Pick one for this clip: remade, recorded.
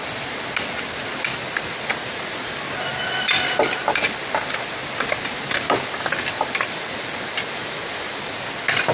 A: recorded